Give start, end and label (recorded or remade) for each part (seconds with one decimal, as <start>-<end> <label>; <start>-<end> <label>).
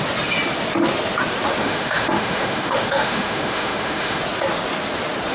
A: 0.0-1.6 recorded; 1.6-4.2 remade; 4.2-5.3 recorded